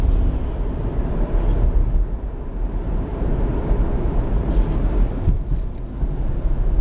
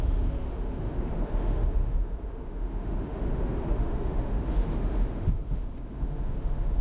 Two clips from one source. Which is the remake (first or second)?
second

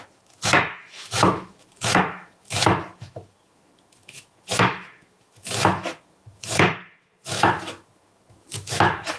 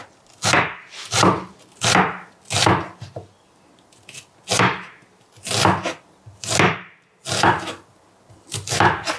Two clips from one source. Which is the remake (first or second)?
first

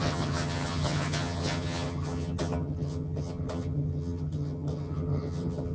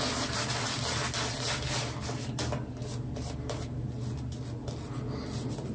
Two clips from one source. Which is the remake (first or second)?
first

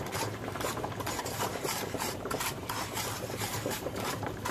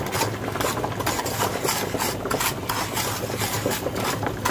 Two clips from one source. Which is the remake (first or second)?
first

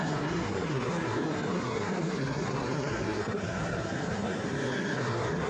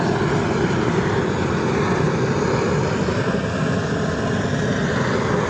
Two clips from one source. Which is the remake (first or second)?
first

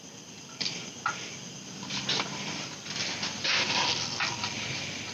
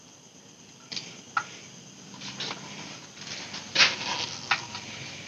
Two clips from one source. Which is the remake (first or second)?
first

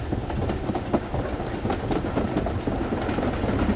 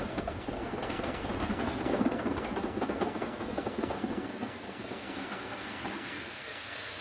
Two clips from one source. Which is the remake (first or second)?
second